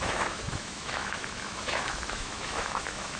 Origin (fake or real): fake